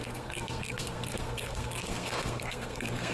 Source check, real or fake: fake